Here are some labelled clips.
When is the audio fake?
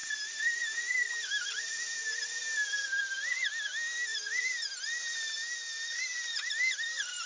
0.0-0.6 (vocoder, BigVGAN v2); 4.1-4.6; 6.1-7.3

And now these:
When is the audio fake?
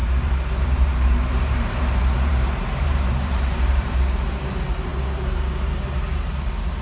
0.0-4.0 (vocoder, BigVGAN v2)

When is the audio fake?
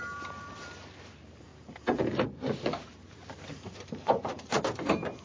0.0-5.2 (vocoder, BigVGAN v2)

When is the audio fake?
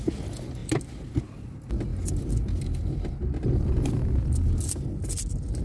none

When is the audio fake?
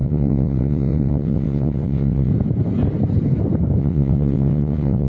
0.0-2.3 (vocoder, WaveNeXt); 3.8-5.1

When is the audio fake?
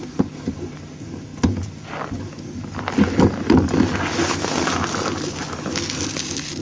none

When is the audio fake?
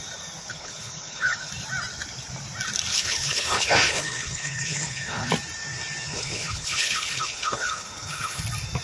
0.5-1.5 (codec, HILCodec); 2.9-5.3; 6.1-8.4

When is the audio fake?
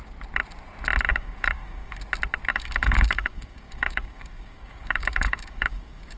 1.1-2.0 (codec, DAC); 2.5-6.2